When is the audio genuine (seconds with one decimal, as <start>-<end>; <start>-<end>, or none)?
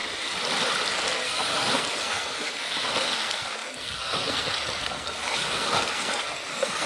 0.0-0.9